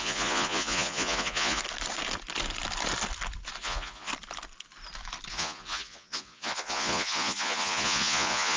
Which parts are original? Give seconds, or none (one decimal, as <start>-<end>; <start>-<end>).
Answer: 1.6-3.6; 4.1-5.3